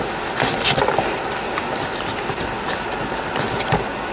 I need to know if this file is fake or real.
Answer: real